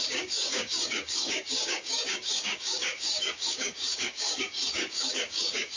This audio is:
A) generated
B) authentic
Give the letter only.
A